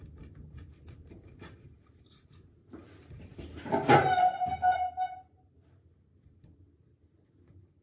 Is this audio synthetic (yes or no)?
no